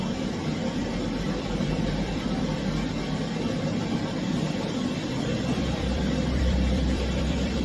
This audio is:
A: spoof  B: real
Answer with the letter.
A